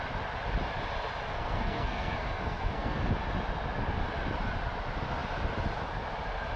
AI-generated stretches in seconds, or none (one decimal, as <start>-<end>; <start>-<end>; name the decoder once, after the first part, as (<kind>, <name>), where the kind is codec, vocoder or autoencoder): 1.3-3.1 (codec, SNAC)